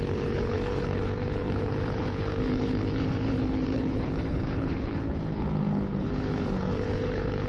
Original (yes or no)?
no